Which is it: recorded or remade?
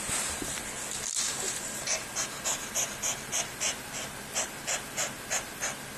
remade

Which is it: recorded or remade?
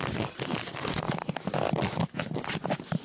recorded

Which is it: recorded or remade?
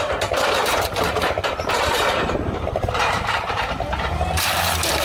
remade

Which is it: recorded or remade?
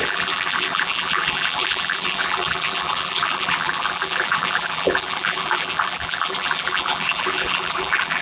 remade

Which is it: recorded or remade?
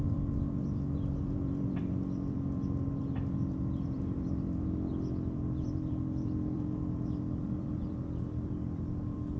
remade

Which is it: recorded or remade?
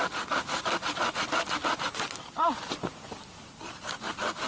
remade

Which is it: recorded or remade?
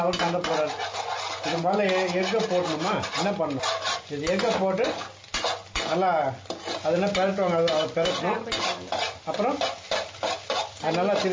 recorded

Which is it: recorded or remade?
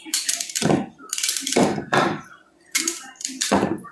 remade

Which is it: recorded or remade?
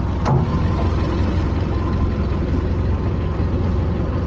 recorded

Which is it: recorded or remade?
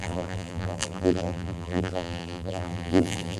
remade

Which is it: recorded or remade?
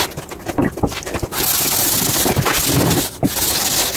recorded